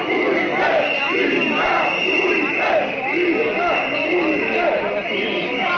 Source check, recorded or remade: recorded